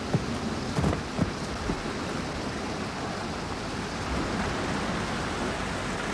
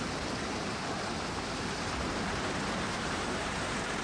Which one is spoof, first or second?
second